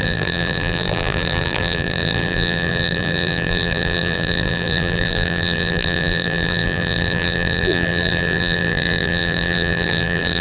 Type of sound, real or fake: fake